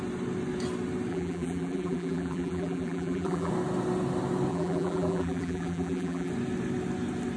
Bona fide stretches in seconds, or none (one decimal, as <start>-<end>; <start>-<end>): 0.0-1.1; 3.5-4.5; 6.3-7.4